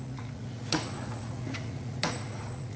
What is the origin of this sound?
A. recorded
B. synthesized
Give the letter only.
B